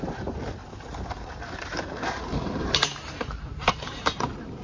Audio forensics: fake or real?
fake